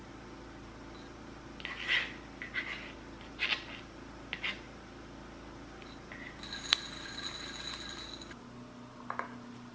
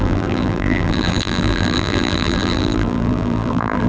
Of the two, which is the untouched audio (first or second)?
first